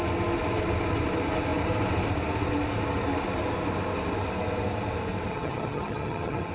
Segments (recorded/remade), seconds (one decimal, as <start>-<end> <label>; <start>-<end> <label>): 0.0-5.3 recorded; 5.3-6.5 remade